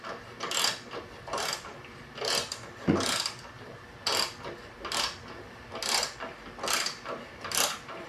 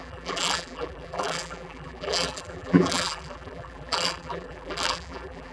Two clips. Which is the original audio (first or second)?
first